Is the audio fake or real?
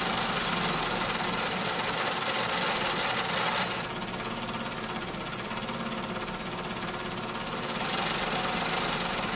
real